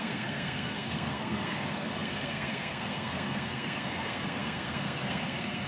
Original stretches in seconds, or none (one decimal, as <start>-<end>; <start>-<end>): none